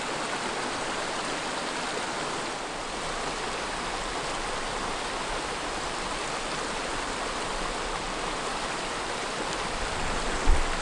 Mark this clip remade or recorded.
recorded